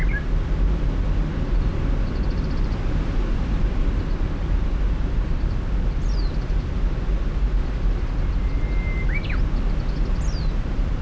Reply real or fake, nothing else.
real